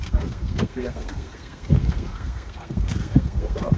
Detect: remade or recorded remade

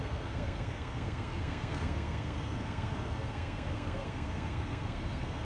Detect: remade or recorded remade